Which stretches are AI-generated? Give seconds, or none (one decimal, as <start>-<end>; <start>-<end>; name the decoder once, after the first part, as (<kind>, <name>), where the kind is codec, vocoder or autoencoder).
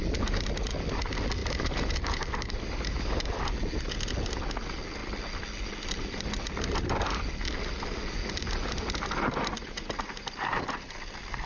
1.4-3.4 (vocoder, BigVGAN v2); 9.6-10.9